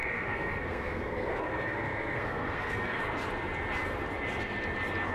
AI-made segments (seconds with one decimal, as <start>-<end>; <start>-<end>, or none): 0.0-3.0